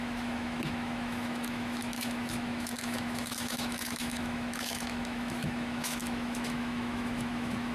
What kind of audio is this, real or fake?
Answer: fake